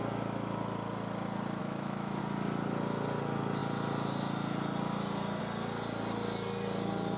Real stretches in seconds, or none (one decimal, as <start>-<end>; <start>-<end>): 0.0-1.6; 2.2-7.2

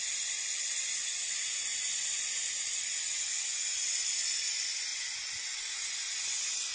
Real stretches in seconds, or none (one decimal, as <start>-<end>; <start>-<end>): 0.0-6.7

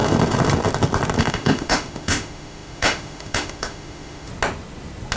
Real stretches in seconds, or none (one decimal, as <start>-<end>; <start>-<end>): 0.0-1.2; 4.3-5.2